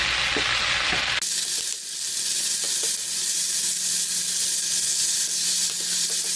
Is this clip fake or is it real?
real